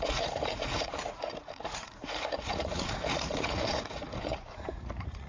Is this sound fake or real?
fake